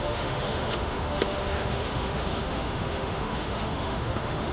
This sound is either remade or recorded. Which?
remade